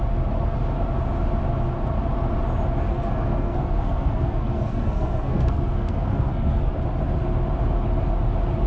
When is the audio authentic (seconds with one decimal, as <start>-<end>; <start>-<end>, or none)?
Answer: 0.0-2.9; 6.7-8.7